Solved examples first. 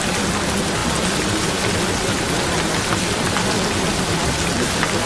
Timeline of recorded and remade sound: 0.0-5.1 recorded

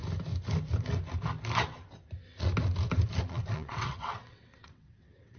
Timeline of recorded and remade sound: 0.0-3.2 recorded; 3.2-5.4 remade

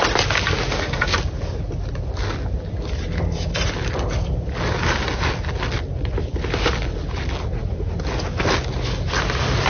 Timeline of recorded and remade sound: 0.0-9.7 recorded